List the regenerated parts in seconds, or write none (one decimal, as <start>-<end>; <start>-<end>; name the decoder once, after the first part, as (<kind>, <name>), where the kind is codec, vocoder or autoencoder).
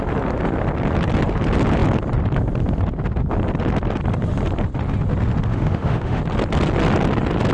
5.5-6.2 (autoencoder, DAC-VAE)